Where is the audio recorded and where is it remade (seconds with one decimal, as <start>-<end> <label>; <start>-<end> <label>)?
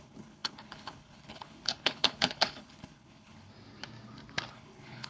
0.0-3.5 remade; 3.5-4.5 recorded; 4.5-5.1 remade